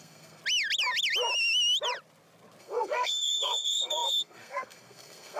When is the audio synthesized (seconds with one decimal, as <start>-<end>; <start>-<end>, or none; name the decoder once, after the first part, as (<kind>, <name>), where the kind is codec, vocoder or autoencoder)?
0.0-0.4 (codec, SNAC); 2.6-5.4